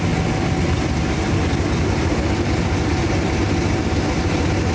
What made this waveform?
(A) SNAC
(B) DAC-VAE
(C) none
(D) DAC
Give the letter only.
C